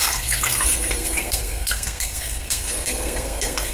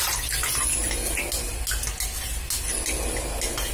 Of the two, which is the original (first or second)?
second